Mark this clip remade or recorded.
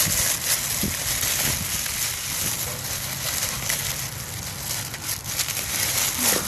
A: recorded